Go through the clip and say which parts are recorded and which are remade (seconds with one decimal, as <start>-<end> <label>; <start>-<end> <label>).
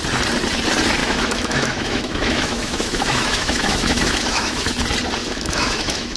0.0-1.0 recorded; 1.0-4.7 remade; 4.7-5.2 recorded; 5.2-6.2 remade